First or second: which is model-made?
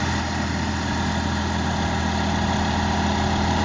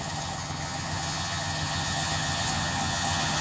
second